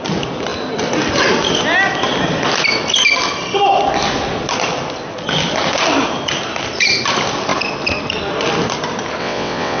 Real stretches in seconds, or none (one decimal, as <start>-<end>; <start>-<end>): 0.0-9.2